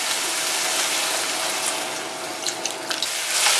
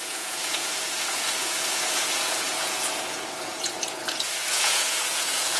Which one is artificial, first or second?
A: second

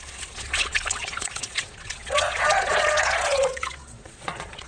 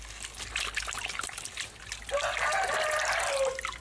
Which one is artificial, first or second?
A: first